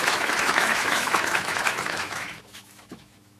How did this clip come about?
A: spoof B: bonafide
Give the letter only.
A